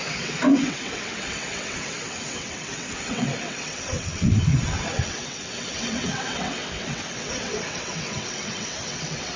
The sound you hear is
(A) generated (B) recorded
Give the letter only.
A